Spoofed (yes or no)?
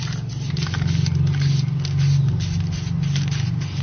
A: no